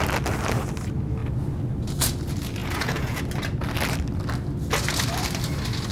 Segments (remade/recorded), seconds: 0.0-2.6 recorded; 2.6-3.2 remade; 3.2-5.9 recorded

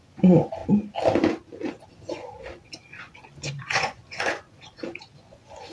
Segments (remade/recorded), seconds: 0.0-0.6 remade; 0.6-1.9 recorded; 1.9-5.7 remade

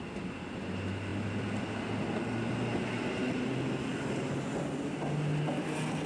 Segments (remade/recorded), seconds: 0.0-6.1 recorded